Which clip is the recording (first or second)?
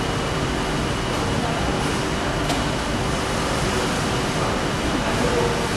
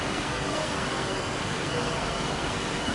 first